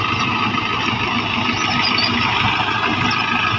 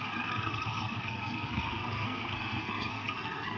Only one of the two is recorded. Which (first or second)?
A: first